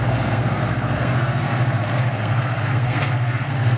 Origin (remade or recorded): remade